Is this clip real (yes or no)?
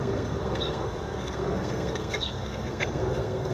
no